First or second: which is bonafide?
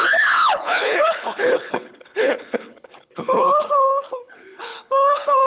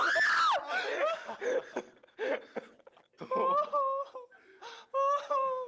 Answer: second